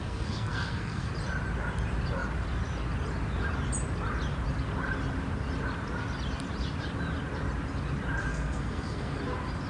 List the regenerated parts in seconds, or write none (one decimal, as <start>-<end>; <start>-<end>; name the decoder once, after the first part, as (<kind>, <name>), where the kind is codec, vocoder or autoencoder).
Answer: 0.0-1.1 (codec, SNAC); 8.2-9.2